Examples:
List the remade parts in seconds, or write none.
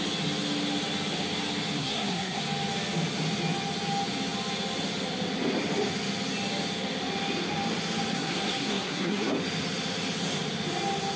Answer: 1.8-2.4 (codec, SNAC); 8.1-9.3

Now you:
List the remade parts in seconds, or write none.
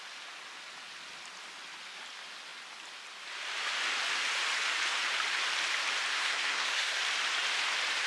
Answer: 6.1-7.0 (codec, SNAC)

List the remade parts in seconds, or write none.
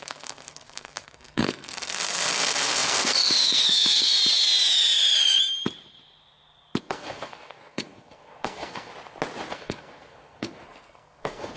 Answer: 0.0-4.1 (codec, SNAC); 6.8-8.9; 9.5-11.6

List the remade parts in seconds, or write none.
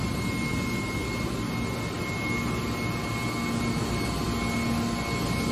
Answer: none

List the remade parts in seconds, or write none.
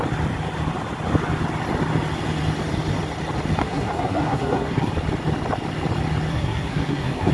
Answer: 3.6-4.9 (codec, SNAC); 6.3-7.3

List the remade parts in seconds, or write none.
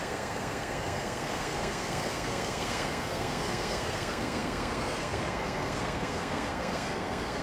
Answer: 0.0-7.4 (codec, SNAC)